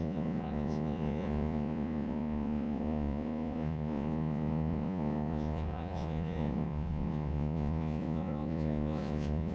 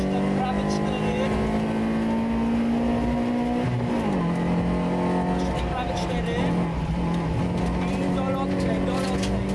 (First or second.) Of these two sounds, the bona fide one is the second